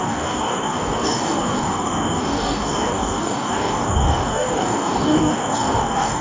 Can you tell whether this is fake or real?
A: fake